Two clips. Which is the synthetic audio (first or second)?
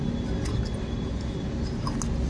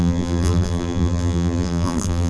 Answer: second